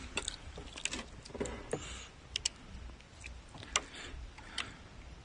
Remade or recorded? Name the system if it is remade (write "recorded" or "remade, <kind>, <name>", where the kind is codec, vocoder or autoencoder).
recorded